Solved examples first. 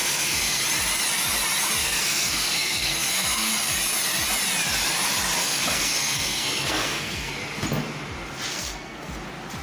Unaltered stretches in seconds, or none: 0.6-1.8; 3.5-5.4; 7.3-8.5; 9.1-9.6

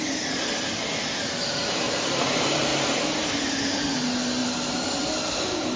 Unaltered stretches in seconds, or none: 0.0-5.8

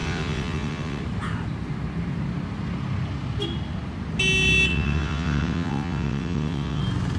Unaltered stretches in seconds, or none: 1.0-4.7; 6.8-7.2

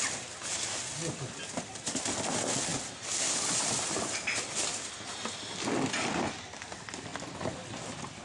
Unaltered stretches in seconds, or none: 0.0-8.2